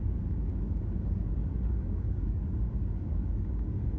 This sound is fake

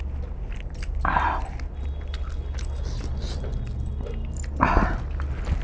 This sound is real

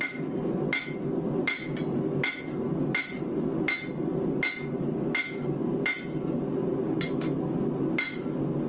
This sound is real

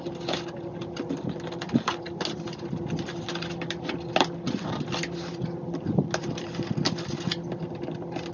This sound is real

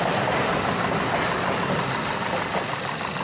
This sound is real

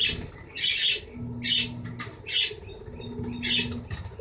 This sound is real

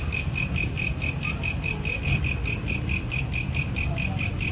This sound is real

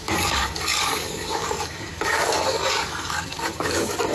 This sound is fake